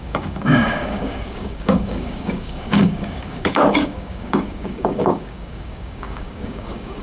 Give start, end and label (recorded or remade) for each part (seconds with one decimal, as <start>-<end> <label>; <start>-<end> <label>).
0.0-7.0 remade